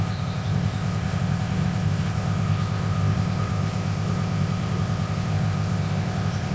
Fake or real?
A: fake